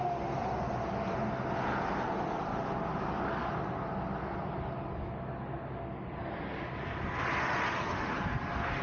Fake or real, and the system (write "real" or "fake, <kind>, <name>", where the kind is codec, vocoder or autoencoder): real